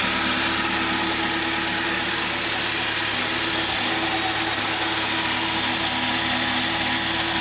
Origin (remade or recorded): recorded